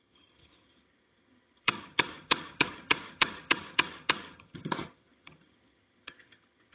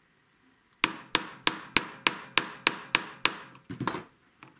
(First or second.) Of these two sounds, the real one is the second